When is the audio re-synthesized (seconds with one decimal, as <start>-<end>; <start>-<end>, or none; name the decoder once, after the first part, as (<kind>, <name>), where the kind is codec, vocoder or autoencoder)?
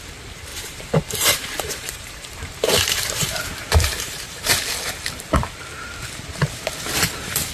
0.5-4.5 (vocoder, BigVGAN v2)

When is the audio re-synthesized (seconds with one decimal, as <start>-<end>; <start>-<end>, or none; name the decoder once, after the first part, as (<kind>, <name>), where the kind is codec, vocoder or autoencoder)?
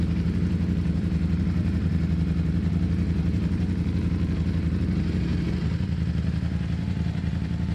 0.0-7.7 (vocoder, BigVGAN v2)